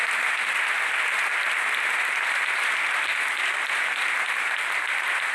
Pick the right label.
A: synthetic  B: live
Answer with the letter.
B